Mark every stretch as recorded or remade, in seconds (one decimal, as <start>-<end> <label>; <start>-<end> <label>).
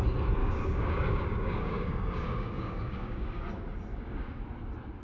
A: 0.0-0.4 recorded; 0.4-3.4 remade; 3.4-3.9 recorded; 3.9-4.4 remade; 4.4-5.0 recorded